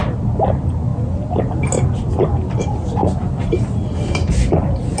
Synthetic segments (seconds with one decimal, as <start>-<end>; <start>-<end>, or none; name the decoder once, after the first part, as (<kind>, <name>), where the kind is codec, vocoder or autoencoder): none